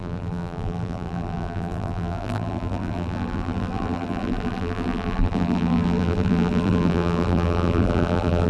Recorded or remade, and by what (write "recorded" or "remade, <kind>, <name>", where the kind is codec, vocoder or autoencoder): remade, vocoder, BigVGAN v2